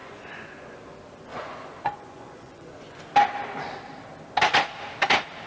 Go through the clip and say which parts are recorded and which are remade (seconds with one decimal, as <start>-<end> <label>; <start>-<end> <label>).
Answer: 0.0-0.8 remade; 0.8-1.3 recorded; 1.3-3.0 remade; 3.0-5.5 recorded